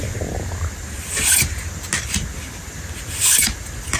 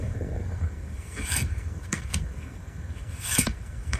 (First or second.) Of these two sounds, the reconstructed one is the second